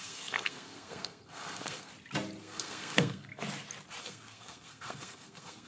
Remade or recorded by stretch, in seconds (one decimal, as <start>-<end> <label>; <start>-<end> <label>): 0.0-1.9 remade; 1.9-2.4 recorded; 2.4-3.3 remade; 3.3-4.0 recorded; 4.0-5.7 remade